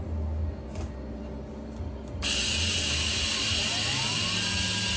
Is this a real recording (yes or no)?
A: yes